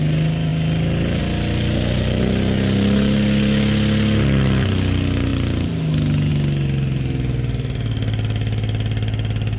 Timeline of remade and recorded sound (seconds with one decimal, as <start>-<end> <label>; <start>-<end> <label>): 0.0-9.6 recorded